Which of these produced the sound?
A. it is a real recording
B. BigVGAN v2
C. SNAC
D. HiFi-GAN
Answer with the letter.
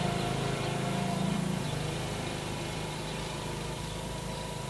B